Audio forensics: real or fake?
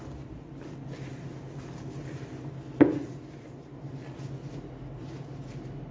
real